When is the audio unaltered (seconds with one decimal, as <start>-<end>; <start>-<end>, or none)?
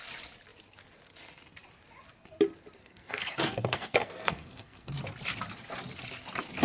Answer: 0.0-2.8; 4.9-6.6